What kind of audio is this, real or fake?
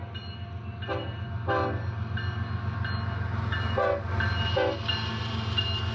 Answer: real